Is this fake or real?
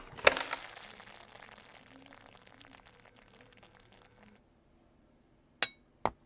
real